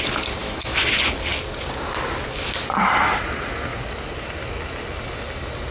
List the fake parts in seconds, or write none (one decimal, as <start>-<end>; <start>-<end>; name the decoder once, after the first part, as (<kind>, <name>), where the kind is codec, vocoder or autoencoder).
0.4-0.9 (autoencoder, DAC-VAE)

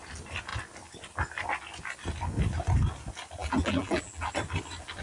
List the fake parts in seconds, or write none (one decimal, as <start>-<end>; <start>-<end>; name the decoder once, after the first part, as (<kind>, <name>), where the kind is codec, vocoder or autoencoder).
3.4-4.3 (vocoder, BigVGAN v2)

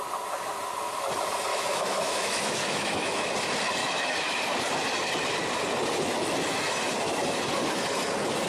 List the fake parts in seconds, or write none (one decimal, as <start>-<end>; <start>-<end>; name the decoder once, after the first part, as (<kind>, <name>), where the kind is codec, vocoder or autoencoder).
1.5-3.3 (autoencoder, DAC-VAE); 3.8-4.4

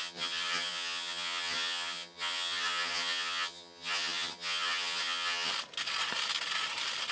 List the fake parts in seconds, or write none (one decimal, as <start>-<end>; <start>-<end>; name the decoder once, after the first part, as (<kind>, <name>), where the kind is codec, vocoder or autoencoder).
0.0-5.5 (vocoder, HiFi-GAN)

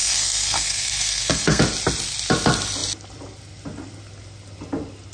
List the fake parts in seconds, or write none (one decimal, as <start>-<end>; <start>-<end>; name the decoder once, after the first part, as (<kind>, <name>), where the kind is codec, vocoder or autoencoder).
0.0-1.6 (codec, SNAC)